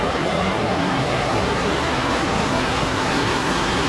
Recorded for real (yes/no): no